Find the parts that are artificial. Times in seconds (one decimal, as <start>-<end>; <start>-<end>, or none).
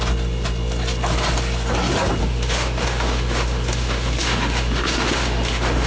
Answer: 2.2-5.9